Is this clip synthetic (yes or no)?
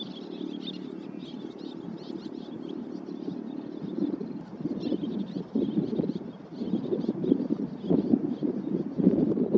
no